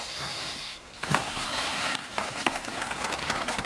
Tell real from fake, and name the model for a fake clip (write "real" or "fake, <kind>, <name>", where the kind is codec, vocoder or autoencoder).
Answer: fake, codec, SNAC